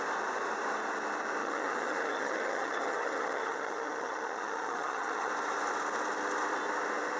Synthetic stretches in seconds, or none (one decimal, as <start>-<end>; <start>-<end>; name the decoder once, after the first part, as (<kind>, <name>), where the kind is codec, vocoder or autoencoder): 1.4-5.3 (vocoder, HiFi-GAN)